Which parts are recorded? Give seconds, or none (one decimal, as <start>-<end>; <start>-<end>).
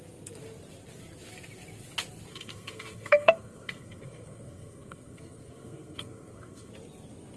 0.0-2.3; 6.7-7.4